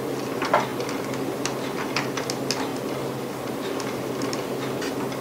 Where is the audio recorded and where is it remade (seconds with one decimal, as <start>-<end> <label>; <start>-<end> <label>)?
0.0-5.2 recorded